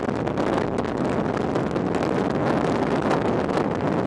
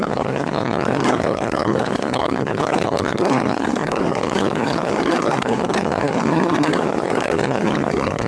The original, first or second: first